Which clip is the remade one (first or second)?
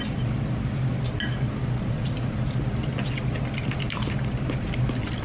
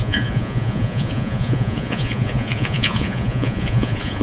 second